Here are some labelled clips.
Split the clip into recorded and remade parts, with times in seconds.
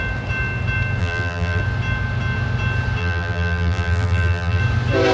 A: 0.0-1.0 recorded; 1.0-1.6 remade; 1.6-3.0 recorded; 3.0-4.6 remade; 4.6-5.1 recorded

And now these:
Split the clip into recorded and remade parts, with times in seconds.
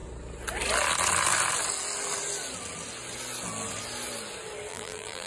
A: 0.0-4.7 recorded; 4.7-5.3 remade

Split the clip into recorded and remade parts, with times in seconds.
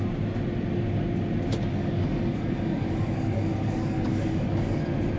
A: 0.0-1.7 recorded; 1.7-4.8 remade; 4.8-5.2 recorded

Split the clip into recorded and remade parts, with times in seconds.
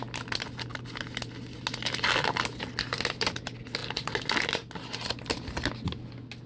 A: 0.0-6.5 recorded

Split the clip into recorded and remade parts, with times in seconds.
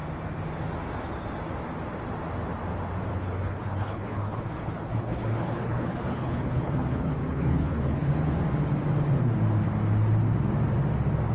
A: 0.0-3.1 recorded; 3.1-8.1 remade; 8.1-11.3 recorded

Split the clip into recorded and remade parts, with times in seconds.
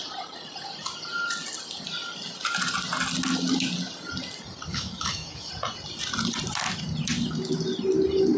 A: 0.0-4.7 recorded; 4.7-5.5 remade; 5.5-8.4 recorded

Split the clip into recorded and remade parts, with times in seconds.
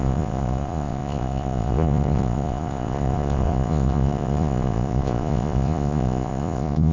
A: 0.0-6.9 remade